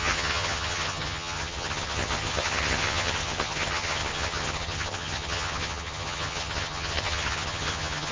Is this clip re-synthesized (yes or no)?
yes